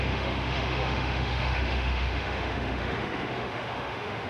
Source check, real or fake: fake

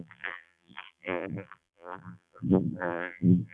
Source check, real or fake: fake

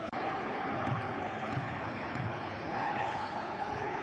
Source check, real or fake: fake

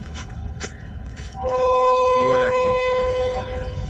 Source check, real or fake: fake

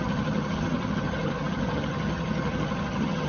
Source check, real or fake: fake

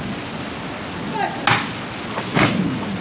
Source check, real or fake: real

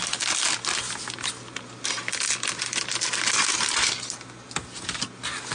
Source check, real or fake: real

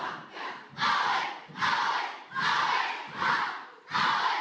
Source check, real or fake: real